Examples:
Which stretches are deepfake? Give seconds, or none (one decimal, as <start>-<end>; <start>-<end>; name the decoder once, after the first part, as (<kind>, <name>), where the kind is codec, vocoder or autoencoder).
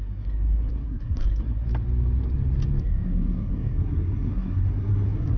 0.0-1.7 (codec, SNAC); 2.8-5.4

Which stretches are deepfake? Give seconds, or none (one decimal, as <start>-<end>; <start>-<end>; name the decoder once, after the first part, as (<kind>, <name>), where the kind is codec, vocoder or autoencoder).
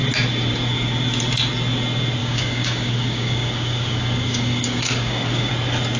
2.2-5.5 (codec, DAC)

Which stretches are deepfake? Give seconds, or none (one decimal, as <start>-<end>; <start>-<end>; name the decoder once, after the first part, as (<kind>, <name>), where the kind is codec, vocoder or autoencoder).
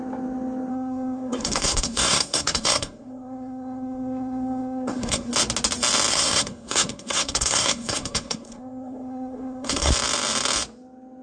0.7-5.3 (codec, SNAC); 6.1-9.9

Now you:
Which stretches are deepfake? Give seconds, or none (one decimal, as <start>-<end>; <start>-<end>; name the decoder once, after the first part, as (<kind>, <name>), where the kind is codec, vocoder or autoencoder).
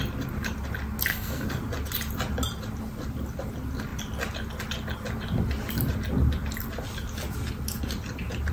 1.1-1.6 (codec, SNAC)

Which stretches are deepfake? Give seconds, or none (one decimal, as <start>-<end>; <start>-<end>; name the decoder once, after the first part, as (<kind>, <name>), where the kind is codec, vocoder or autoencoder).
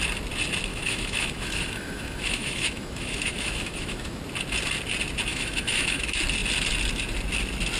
0.7-4.2 (autoencoder, DAC-VAE); 5.3-6.0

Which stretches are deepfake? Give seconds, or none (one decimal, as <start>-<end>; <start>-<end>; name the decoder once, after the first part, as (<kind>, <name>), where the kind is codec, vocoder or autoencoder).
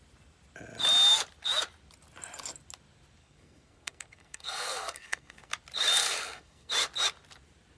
3.2-5.5 (codec, SNAC); 6.0-6.7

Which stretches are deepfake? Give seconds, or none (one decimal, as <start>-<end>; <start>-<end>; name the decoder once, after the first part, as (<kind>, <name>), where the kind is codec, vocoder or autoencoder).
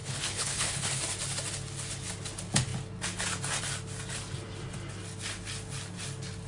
0.0-1.0 (codec, HILCodec)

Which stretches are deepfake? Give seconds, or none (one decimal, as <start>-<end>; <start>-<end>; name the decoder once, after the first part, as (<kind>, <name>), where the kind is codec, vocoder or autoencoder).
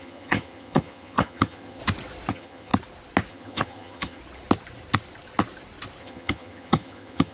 0.0-1.8 (vocoder, HiFi-GAN); 2.3-2.7; 3.3-4.2; 6.0-7.3